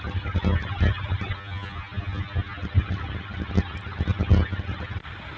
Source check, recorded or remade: recorded